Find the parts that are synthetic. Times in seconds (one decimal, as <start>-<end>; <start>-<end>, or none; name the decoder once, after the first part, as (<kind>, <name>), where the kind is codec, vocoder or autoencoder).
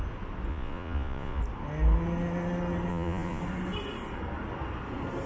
0.5-1.4 (vocoder, Vocos); 2.9-3.4